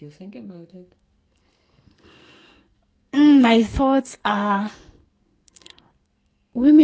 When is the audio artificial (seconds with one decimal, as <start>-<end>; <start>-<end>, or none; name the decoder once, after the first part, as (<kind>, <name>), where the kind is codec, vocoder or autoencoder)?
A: 0.0-6.8 (codec, SNAC)